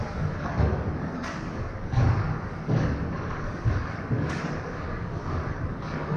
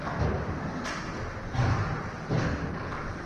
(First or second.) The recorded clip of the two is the second